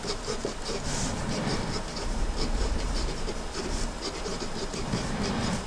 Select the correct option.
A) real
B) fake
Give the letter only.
A